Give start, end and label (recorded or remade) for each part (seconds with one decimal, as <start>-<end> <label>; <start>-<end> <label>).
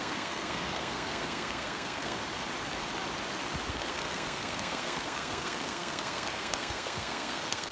0.0-2.2 remade; 2.2-3.7 recorded; 3.7-7.7 remade